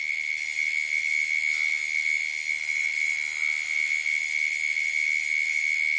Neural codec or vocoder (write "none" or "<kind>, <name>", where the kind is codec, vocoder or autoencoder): none